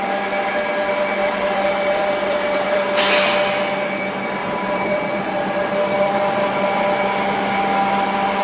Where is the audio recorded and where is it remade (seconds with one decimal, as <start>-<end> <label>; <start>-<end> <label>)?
0.0-1.2 recorded; 1.2-3.0 remade; 3.0-4.4 recorded; 4.4-6.4 remade; 6.4-8.4 recorded